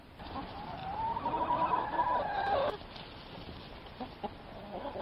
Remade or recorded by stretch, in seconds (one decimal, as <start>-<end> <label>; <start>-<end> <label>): 0.0-0.8 remade; 0.8-3.8 recorded; 3.8-5.0 remade